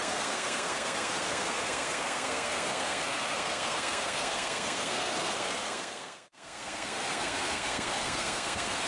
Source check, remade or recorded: remade